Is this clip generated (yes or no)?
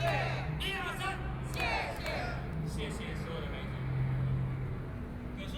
no